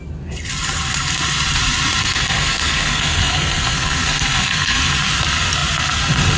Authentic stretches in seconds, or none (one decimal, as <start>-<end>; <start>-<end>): 0.0-2.0; 4.8-6.4